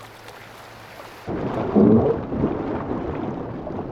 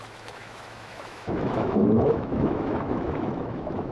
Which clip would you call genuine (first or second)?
first